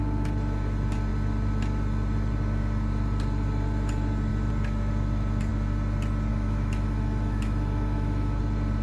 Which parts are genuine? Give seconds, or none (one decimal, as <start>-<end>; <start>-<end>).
0.0-6.3; 8.4-8.8